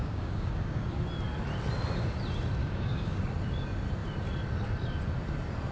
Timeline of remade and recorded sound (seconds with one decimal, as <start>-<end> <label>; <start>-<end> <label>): 0.0-0.8 remade; 0.8-2.6 recorded; 2.6-3.2 remade; 3.2-5.7 recorded